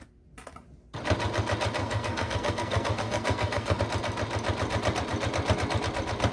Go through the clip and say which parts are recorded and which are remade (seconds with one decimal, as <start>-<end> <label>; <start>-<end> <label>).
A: 0.0-1.8 recorded; 1.8-3.8 remade; 3.8-6.3 recorded